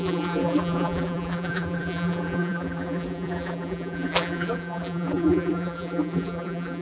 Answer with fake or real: fake